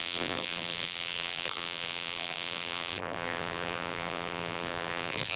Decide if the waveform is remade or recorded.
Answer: remade